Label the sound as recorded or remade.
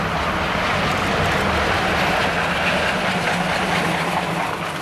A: recorded